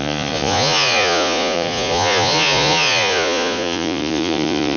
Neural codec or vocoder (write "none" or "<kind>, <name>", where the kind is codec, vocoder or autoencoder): vocoder, Vocos